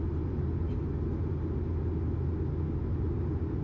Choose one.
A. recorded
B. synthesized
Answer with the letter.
A